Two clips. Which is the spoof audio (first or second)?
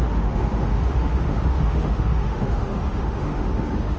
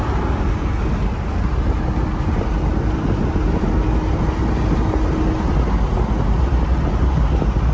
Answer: first